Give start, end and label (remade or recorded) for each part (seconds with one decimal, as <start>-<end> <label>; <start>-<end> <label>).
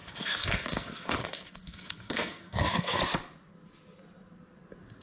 0.0-3.0 remade; 3.0-5.0 recorded